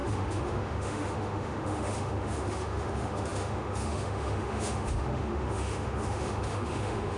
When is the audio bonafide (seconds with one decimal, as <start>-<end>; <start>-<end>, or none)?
none